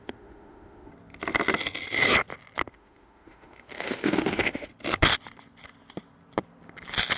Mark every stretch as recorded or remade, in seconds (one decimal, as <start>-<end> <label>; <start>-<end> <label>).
0.0-0.9 remade; 0.9-2.7 recorded; 2.7-4.7 remade; 4.7-7.2 recorded